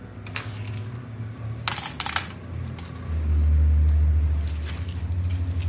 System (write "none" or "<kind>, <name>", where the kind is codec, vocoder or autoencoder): none